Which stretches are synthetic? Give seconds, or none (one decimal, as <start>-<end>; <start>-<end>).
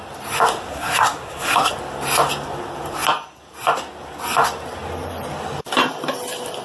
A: 0.7-1.7